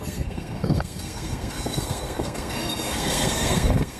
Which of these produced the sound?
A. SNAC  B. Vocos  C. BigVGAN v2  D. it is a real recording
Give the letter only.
A